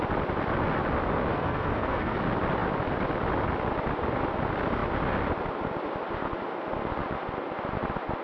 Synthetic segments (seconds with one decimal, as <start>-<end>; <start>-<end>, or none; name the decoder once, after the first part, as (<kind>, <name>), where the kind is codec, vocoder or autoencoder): 1.3-2.2 (codec, SNAC)